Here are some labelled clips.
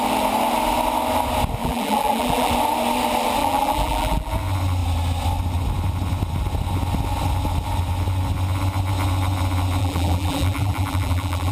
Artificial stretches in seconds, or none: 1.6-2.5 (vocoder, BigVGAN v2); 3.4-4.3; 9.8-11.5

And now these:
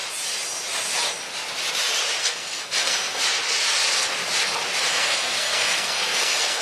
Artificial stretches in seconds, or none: 2.2-3.2 (codec, SNAC); 4.9-6.6

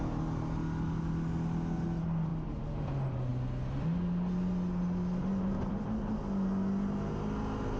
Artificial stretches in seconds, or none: none

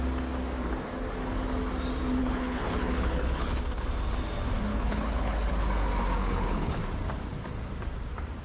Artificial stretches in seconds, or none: 2.2-3.6 (codec, HILCodec); 4.7-5.5; 6.2-6.8

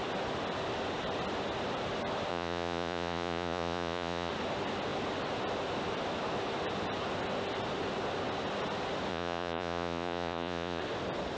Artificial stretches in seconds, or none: 2.3-4.3 (vocoder, Vocos); 9.1-10.8